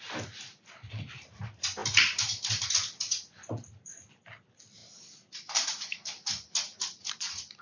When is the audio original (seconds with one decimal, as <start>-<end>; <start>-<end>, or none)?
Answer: 0.0-7.6